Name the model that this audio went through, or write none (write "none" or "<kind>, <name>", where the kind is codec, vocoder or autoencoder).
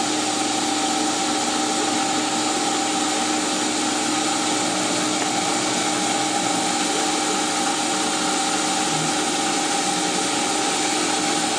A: none